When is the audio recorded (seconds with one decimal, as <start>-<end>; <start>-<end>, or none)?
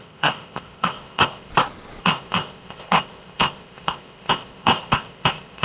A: 1.5-2.0